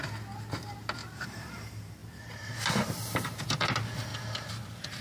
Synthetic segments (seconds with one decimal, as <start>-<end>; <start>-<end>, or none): 1.0-1.5